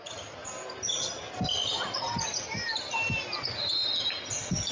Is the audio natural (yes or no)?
yes